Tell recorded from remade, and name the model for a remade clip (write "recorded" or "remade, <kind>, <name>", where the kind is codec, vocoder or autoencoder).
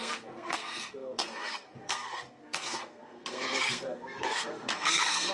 remade, codec, SNAC